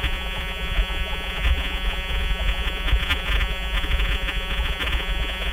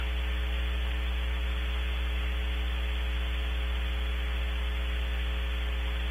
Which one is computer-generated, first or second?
first